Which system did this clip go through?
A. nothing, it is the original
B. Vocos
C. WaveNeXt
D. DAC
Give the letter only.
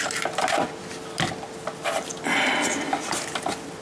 A